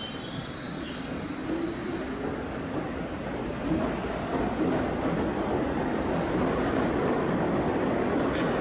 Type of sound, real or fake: real